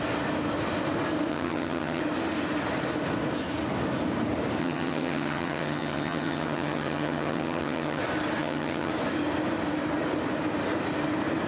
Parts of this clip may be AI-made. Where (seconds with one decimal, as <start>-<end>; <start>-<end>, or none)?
1.3-2.0; 4.6-8.0; 8.4-8.9